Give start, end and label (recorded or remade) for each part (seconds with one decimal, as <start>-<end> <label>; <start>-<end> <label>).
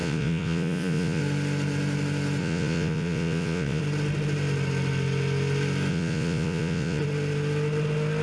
0.0-1.2 remade; 1.2-2.4 recorded; 2.4-3.8 remade; 3.8-5.9 recorded; 5.9-7.0 remade; 7.0-8.2 recorded